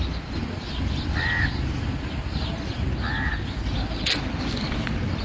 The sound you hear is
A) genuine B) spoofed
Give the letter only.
A